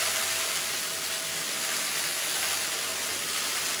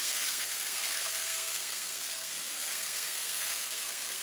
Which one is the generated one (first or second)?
second